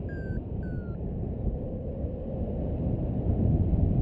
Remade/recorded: recorded